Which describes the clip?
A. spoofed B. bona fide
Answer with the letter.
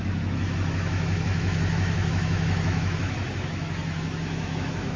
A